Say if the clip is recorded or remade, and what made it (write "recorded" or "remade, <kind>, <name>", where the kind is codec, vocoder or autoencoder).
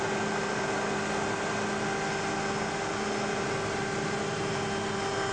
recorded